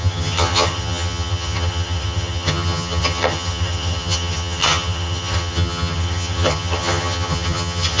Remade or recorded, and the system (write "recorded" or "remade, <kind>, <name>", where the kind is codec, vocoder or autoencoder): remade, vocoder, HiFi-GAN